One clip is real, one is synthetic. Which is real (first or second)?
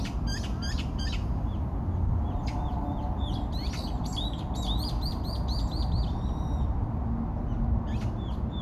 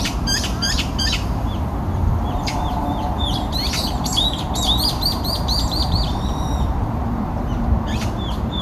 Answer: first